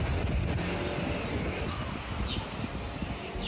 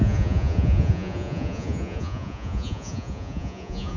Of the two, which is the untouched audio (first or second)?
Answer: first